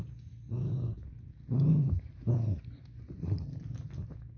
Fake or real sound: real